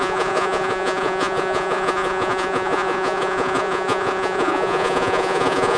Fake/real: fake